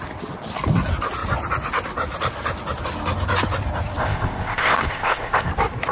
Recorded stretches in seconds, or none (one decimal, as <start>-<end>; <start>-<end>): 0.0-4.0; 5.5-5.9